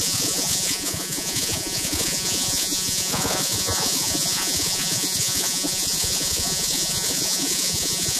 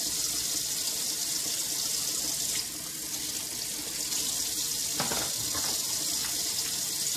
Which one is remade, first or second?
first